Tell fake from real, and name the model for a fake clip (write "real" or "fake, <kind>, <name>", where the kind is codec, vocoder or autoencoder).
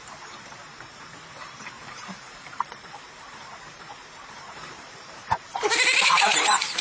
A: fake, vocoder, BigVGAN v2